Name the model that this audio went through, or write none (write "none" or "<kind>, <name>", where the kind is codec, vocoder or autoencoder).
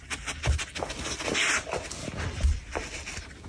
none